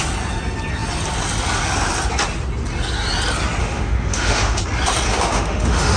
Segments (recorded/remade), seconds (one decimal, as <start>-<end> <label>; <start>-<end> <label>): 0.0-3.6 recorded; 3.6-4.6 remade; 4.6-5.1 recorded; 5.1-6.0 remade